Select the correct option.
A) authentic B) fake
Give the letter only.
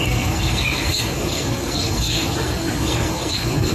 B